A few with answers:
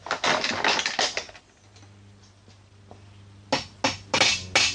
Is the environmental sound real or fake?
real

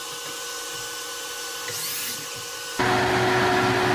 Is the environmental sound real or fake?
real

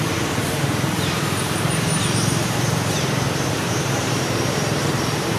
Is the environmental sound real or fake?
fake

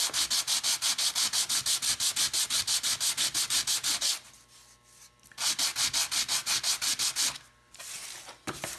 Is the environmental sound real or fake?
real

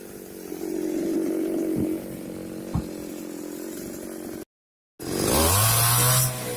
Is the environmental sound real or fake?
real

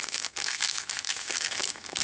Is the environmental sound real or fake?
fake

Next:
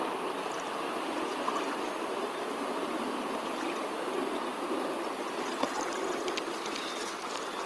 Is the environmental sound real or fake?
real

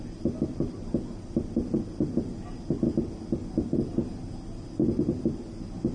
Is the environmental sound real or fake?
real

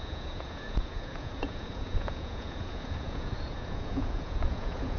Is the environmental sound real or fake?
fake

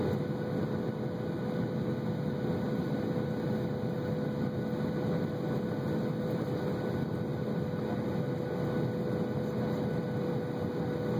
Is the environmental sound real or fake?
real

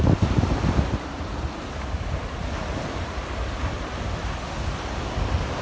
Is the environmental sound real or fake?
real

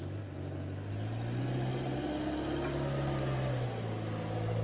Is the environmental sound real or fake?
real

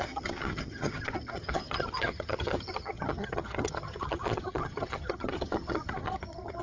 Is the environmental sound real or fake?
fake